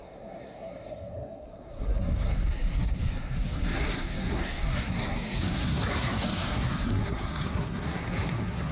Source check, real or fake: fake